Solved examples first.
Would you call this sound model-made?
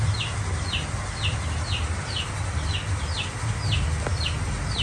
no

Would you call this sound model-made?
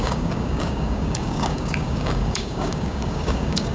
yes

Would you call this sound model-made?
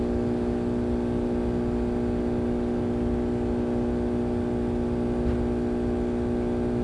no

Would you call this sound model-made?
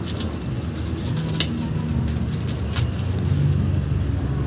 no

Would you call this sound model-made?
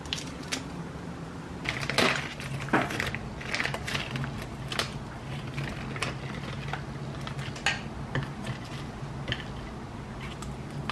no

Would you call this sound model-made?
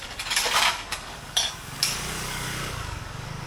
yes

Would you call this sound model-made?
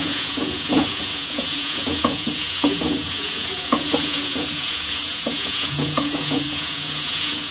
yes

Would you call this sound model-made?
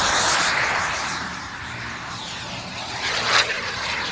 yes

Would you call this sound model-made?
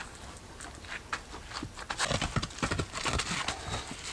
no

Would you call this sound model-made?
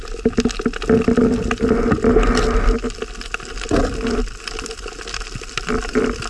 no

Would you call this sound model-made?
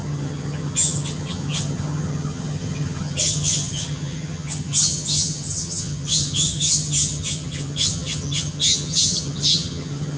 yes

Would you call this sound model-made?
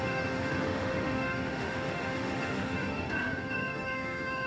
yes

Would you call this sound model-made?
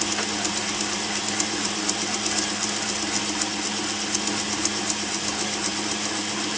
no